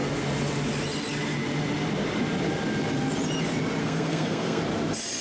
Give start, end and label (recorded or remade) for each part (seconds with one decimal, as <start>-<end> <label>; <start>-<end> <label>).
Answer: 0.0-3.8 recorded; 3.8-4.6 remade; 4.6-5.2 recorded